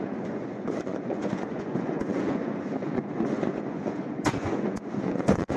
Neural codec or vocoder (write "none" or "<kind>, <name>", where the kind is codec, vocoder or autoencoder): vocoder, Vocos